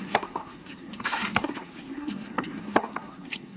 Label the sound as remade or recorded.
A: remade